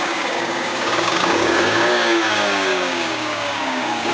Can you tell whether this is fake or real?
fake